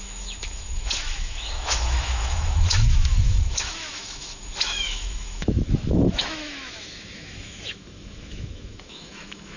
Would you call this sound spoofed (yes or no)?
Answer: yes